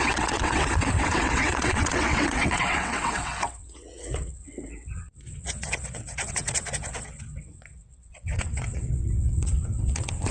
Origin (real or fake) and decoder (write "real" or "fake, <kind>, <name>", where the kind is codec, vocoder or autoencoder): fake, vocoder, WaveNeXt